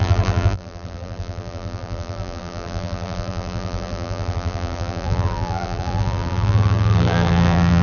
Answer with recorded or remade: remade